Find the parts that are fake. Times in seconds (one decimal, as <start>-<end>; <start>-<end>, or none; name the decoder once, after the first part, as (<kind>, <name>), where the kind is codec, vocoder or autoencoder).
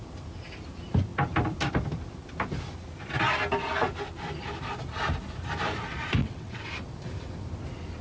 6.2-6.7 (vocoder, WaveNeXt)